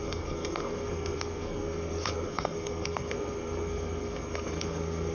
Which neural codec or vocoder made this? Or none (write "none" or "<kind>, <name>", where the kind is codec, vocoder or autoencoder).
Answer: codec, SNAC